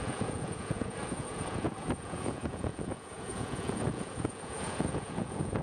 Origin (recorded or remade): remade